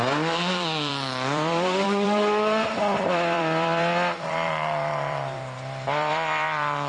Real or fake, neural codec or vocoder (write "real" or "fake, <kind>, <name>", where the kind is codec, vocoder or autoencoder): fake, vocoder, BigVGAN v2